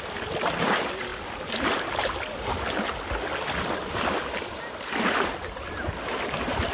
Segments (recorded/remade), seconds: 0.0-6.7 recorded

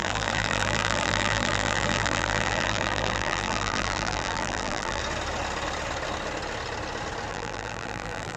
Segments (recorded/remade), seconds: 0.0-5.0 remade; 5.0-7.3 recorded; 7.3-8.4 remade

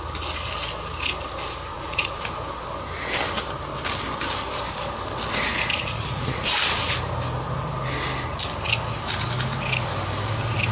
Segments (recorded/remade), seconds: 0.0-1.7 recorded; 1.7-2.2 remade; 2.2-5.7 recorded; 5.7-6.4 remade; 6.4-10.7 recorded

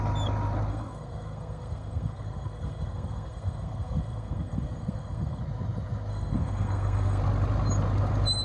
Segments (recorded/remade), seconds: 0.0-0.7 recorded; 0.7-5.4 remade; 5.4-6.1 recorded; 6.1-7.2 remade; 7.2-8.4 recorded

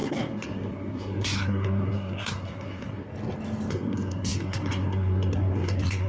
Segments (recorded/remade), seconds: 0.0-3.1 remade; 3.1-3.7 recorded; 3.7-6.1 remade

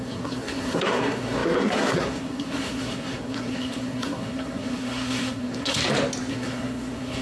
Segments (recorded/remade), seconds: 0.0-5.8 remade; 5.8-6.3 recorded; 6.3-7.2 remade